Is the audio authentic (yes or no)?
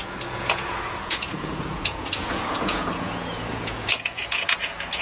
no